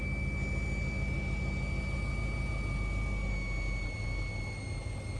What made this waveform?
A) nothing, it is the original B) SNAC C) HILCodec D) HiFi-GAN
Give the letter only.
A